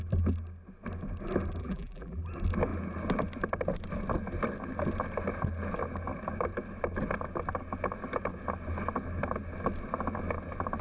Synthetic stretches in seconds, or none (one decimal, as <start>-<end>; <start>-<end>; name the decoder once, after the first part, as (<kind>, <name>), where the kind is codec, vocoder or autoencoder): 1.6-2.2 (vocoder, BigVGAN v2)